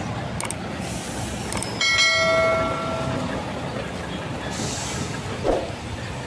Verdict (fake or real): real